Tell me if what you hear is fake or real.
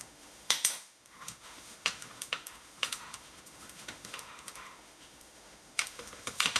fake